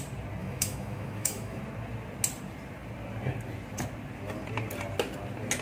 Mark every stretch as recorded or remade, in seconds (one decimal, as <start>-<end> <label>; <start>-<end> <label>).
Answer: 0.0-0.4 recorded; 0.4-1.6 remade; 1.6-5.6 recorded